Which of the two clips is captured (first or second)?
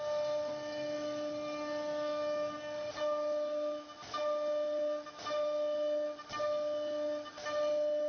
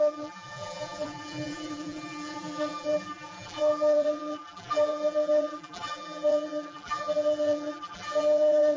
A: first